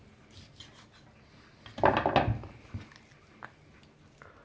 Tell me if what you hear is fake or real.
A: real